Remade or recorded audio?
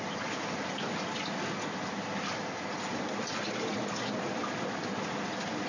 recorded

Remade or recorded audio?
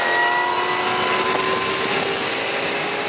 recorded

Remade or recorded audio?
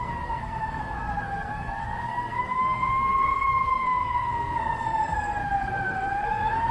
remade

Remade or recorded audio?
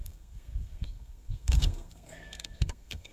remade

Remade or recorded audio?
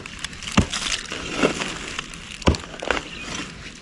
recorded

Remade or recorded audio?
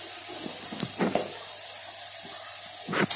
recorded